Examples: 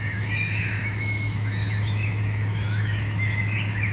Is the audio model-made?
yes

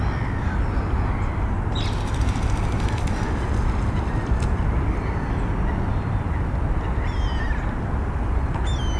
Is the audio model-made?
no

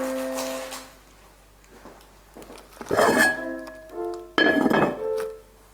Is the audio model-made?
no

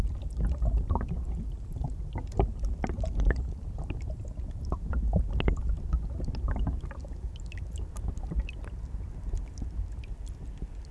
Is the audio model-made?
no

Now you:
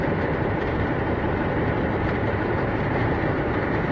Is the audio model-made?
yes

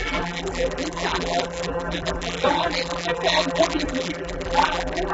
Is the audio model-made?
yes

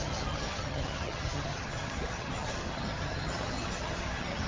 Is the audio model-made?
yes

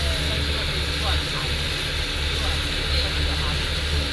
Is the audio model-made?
no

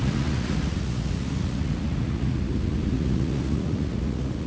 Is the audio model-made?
yes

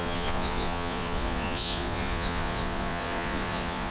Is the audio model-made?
yes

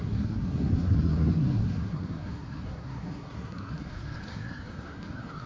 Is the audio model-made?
yes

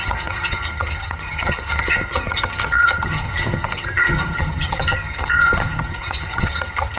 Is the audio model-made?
yes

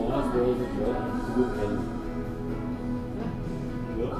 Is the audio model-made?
no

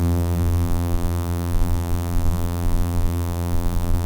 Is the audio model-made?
yes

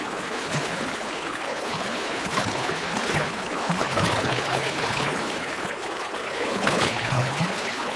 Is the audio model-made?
yes